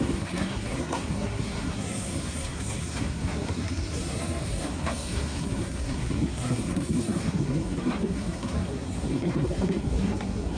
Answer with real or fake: fake